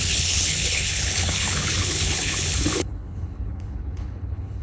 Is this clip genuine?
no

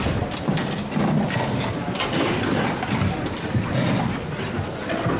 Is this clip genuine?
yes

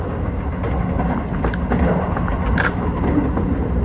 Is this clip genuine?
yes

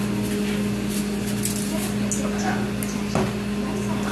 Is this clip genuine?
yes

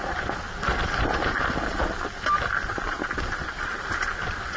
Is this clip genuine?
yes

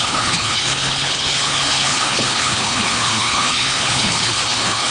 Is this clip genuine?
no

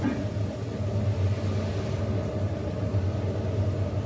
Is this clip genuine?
yes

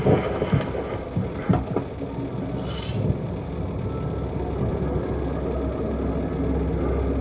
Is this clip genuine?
yes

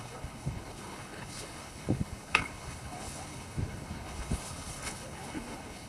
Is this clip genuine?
no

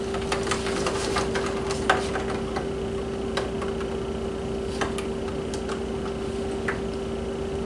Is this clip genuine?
yes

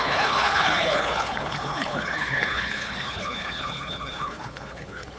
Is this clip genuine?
no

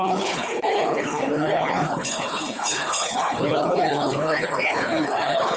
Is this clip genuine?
no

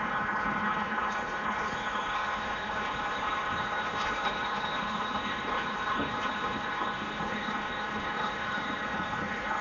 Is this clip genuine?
no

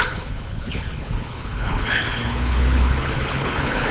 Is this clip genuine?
no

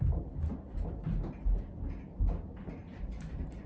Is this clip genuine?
yes